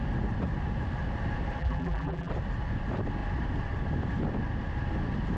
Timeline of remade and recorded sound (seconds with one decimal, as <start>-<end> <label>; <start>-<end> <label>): 0.0-1.6 recorded; 1.6-2.3 remade; 2.3-5.4 recorded